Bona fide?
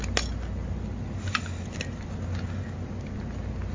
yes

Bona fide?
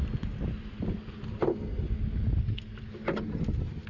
yes